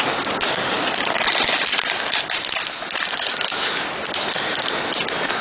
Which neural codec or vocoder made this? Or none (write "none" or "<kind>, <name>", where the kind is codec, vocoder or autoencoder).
none